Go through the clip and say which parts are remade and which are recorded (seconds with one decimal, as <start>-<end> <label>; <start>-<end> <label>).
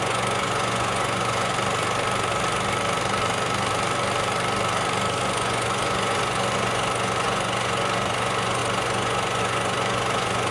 0.0-1.5 remade; 1.5-5.2 recorded; 5.2-10.5 remade